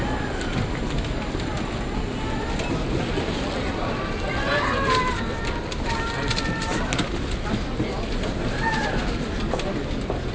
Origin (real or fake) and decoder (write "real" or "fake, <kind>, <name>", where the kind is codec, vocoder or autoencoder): real